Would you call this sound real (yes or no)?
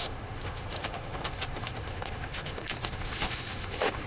no